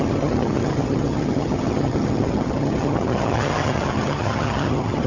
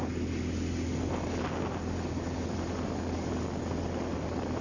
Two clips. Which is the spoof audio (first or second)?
first